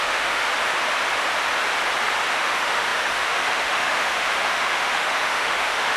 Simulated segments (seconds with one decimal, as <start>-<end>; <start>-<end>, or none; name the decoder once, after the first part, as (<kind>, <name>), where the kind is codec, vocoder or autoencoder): 0.0-0.4 (autoencoder, DAC-VAE); 2.3-6.0